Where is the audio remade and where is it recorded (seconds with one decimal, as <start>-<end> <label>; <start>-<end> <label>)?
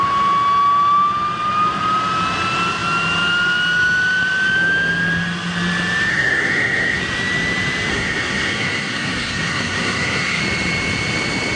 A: 0.0-6.1 recorded; 6.1-7.0 remade; 7.0-7.9 recorded; 7.9-10.4 remade; 10.4-11.6 recorded